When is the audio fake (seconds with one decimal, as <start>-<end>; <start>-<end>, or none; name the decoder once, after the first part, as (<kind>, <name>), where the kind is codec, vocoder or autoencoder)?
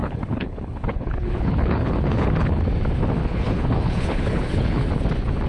0.0-2.6 (codec, HILCodec); 3.2-4.9